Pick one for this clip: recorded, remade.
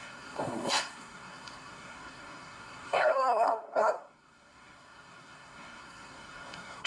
remade